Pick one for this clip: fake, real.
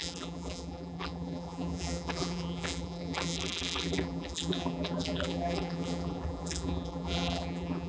fake